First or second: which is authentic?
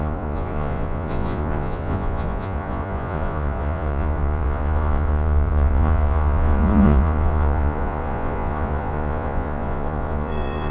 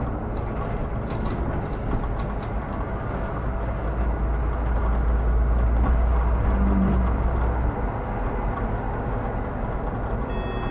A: second